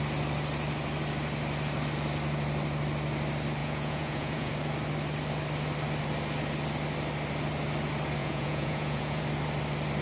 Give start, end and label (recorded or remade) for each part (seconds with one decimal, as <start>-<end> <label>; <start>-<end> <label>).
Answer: 0.0-3.6 recorded; 3.6-4.5 remade; 4.5-8.2 recorded; 8.2-9.2 remade; 9.2-10.0 recorded